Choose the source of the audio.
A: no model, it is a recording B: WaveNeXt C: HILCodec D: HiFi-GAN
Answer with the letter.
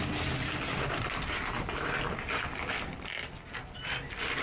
A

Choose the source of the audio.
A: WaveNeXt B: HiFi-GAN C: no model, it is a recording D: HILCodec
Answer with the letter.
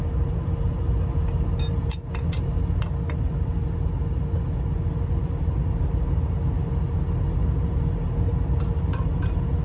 C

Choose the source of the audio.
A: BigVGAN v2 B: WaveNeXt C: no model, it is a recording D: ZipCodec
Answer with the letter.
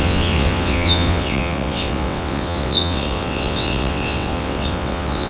B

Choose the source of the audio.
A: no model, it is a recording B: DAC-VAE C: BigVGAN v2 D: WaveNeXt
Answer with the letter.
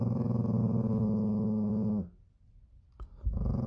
A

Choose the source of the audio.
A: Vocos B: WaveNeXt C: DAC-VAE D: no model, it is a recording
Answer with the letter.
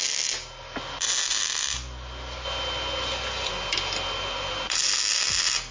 D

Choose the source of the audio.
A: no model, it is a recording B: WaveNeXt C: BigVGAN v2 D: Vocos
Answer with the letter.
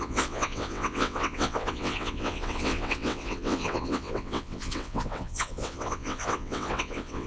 B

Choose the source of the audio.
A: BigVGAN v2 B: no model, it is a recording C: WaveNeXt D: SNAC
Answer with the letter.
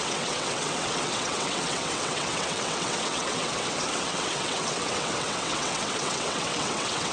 C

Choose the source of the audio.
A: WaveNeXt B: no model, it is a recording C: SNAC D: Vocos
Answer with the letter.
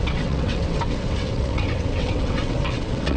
A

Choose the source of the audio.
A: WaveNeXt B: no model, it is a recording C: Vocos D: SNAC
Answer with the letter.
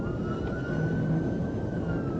B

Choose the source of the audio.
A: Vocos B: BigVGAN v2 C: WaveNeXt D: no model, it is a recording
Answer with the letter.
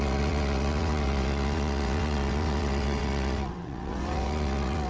C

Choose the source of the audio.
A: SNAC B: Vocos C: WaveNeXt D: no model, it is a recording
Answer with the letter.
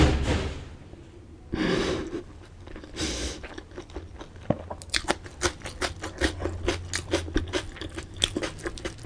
D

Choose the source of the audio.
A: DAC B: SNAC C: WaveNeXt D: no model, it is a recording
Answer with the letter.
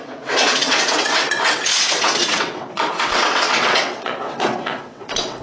C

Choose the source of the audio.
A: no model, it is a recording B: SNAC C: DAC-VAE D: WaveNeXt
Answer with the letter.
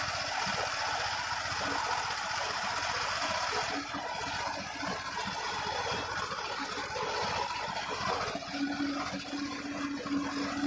A